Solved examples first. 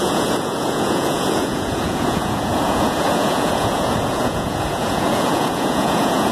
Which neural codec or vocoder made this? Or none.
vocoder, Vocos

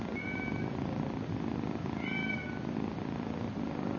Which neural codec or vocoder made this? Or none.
none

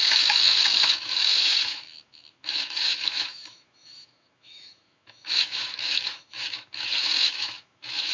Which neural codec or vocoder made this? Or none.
autoencoder, DAC-VAE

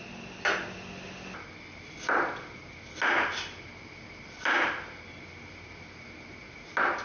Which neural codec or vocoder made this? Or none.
none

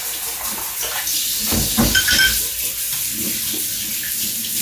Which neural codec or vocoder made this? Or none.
none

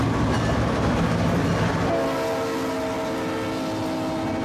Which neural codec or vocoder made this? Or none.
none